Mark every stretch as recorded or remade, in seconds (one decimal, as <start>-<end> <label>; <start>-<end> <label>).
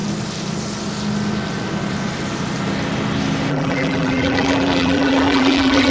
0.0-3.5 recorded; 3.5-5.9 remade